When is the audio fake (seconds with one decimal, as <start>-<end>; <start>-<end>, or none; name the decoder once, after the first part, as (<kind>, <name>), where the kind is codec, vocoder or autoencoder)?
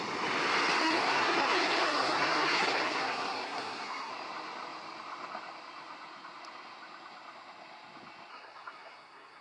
0.8-4.1 (codec, SNAC); 8.3-9.4